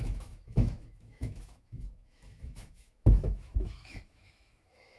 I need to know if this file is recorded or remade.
remade